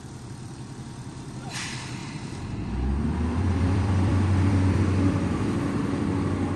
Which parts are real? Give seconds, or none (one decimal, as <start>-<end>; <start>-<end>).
none